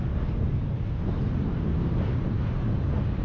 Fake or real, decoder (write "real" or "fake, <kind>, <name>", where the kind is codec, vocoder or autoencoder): real